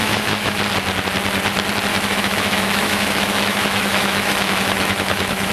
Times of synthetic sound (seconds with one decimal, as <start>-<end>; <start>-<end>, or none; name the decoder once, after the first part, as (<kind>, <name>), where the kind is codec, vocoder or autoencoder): 0.0-0.6 (autoencoder, DAC-VAE); 1.9-5.5